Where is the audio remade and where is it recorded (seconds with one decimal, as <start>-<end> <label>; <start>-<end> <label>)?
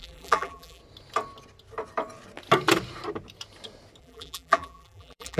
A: 0.0-0.8 remade; 0.8-4.0 recorded; 4.0-5.4 remade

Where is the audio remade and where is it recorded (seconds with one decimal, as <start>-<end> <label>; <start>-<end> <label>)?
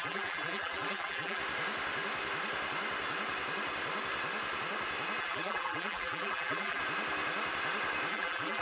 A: 0.0-1.4 remade; 1.4-5.2 recorded; 5.2-6.8 remade; 6.8-8.1 recorded; 8.1-8.6 remade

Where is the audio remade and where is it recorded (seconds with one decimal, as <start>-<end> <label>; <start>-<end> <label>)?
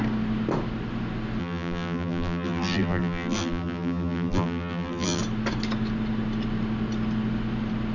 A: 0.0-1.4 recorded; 1.4-5.2 remade; 5.2-7.9 recorded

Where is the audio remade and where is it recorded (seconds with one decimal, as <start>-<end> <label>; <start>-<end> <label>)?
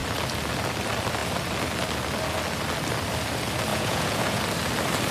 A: 0.0-3.7 recorded; 3.7-4.4 remade; 4.4-5.1 recorded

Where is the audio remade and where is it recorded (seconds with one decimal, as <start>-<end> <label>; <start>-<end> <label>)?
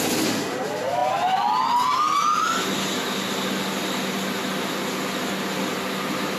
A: 0.0-6.4 recorded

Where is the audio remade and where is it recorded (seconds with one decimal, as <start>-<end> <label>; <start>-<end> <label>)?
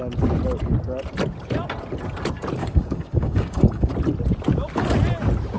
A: 0.0-2.6 recorded; 2.6-3.9 remade; 3.9-5.6 recorded